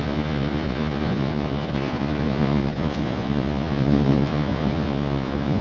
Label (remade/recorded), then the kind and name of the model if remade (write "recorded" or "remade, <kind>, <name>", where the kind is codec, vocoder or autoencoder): remade, vocoder, Vocos